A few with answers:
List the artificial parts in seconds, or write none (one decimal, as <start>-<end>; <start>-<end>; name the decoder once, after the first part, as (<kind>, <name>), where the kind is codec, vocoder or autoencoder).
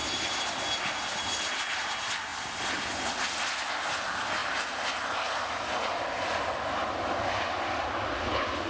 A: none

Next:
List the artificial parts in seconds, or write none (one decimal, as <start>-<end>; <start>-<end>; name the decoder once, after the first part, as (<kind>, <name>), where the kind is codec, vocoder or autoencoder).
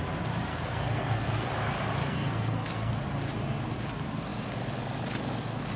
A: 0.5-1.5 (codec, SNAC); 2.0-2.9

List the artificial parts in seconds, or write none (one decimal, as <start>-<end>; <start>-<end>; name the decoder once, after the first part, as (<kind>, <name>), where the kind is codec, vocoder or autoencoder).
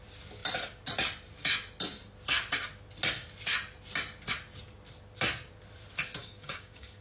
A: 6.2-7.0 (codec, DAC)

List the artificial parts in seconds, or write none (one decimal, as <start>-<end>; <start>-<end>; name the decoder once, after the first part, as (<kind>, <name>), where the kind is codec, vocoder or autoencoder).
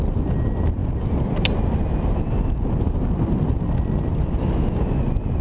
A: none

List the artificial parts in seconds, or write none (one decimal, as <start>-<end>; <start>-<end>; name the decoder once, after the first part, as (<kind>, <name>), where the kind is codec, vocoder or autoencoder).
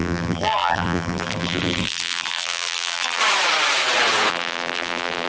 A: 0.0-3.2 (vocoder, BigVGAN v2); 4.3-5.3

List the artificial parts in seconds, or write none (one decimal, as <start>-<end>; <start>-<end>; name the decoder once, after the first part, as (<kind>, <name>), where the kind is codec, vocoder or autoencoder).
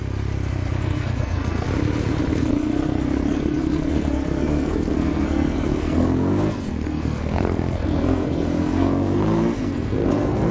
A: 0.8-1.7 (codec, SNAC); 2.3-10.5